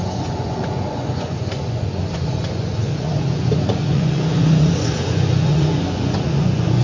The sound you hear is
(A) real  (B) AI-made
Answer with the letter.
B